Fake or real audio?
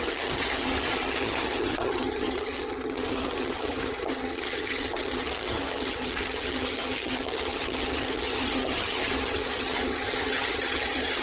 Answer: fake